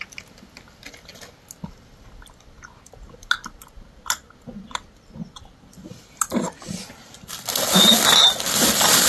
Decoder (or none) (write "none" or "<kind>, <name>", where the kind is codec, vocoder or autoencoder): none